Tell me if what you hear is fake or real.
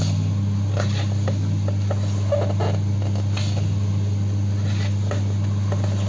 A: real